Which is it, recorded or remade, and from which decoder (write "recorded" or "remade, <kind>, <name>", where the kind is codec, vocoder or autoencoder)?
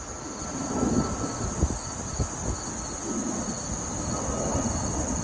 recorded